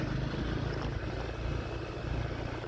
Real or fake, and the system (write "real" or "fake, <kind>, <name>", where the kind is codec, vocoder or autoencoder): real